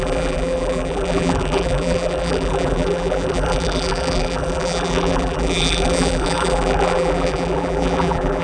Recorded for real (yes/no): no